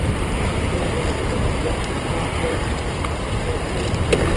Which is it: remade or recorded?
remade